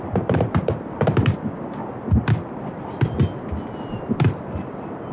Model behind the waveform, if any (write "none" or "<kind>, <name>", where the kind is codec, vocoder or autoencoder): vocoder, BigVGAN v2